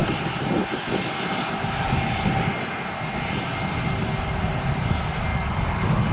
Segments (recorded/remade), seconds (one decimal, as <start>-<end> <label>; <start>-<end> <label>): 0.0-5.3 recorded; 5.3-6.1 remade